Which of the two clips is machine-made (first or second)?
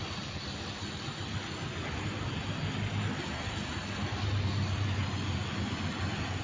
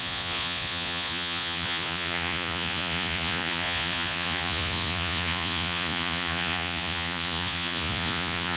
second